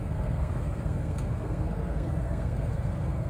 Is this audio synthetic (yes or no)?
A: yes